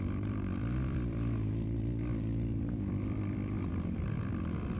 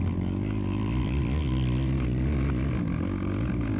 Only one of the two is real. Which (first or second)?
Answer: second